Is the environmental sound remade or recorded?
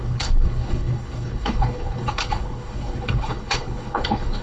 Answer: remade